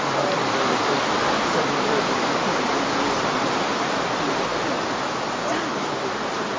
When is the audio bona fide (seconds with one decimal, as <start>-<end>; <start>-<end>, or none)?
0.0-6.6